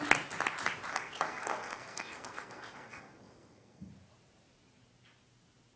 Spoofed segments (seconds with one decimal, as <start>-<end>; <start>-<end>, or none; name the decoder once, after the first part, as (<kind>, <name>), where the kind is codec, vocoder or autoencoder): 0.9-3.9 (codec, SNAC)